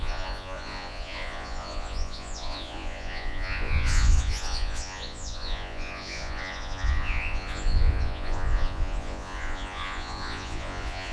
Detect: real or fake fake